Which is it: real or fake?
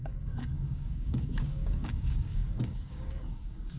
fake